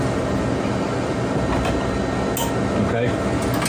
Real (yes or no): yes